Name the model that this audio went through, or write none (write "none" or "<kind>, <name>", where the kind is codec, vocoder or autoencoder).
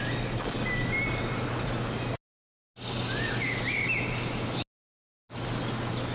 none